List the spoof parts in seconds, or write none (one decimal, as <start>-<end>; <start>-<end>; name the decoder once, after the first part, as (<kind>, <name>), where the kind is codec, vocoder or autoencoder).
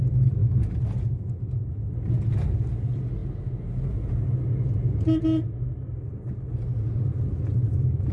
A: none